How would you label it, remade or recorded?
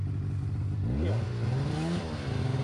recorded